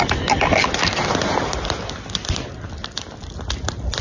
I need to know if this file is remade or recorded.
recorded